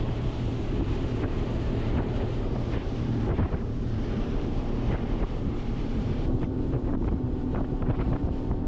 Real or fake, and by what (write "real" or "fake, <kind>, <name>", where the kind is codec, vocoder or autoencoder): fake, vocoder, BigVGAN v2